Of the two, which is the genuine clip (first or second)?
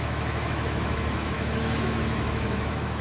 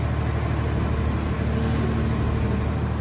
second